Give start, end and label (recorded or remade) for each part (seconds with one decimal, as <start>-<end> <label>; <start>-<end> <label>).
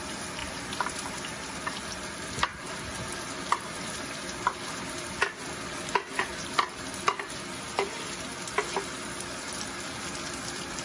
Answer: 0.0-0.4 recorded; 0.4-1.7 remade; 1.7-2.5 recorded; 2.5-5.1 remade; 5.1-6.3 recorded; 6.3-7.0 remade; 7.0-10.8 recorded